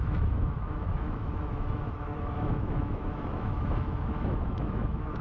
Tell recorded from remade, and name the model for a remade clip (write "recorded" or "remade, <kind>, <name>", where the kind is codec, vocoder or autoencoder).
remade, autoencoder, DAC-VAE